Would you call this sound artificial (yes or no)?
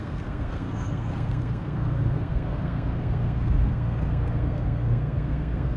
yes